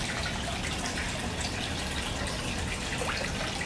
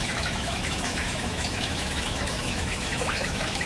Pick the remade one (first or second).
second